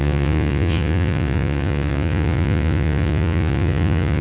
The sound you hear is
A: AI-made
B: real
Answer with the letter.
A